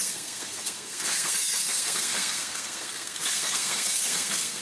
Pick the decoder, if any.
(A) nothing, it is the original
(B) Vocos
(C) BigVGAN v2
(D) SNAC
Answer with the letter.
D